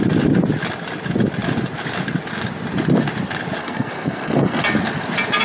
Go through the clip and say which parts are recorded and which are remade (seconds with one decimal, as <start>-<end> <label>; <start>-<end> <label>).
0.0-3.6 recorded; 3.6-4.6 remade; 4.6-5.4 recorded